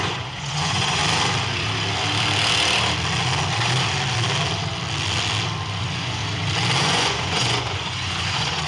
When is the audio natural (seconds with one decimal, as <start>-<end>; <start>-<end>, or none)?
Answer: 1.0-5.8; 6.2-6.8